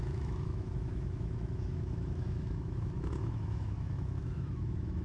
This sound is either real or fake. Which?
fake